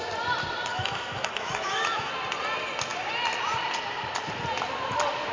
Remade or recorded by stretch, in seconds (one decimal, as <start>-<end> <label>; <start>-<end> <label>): 0.0-0.7 recorded; 0.7-2.1 remade; 2.1-5.3 recorded